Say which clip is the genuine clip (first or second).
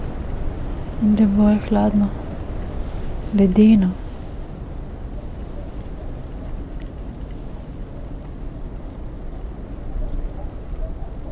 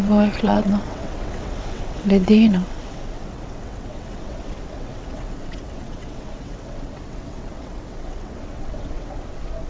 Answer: first